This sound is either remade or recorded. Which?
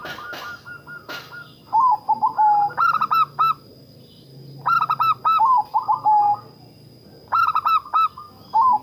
recorded